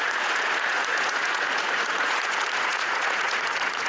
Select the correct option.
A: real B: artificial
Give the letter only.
B